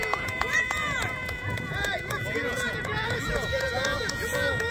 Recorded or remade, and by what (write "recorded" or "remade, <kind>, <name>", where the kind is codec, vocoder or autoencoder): remade, vocoder, Vocos